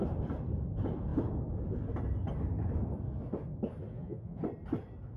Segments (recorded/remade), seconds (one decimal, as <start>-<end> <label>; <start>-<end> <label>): 0.0-3.9 recorded; 3.9-4.4 remade; 4.4-5.2 recorded